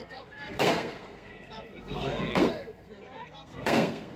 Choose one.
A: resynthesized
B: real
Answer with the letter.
A